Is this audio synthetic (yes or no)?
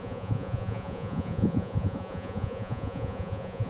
yes